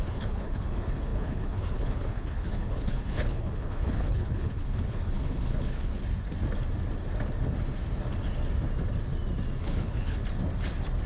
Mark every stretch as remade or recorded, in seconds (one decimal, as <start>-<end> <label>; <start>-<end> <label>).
0.0-5.9 remade; 5.9-9.6 recorded; 9.6-10.2 remade; 10.2-11.1 recorded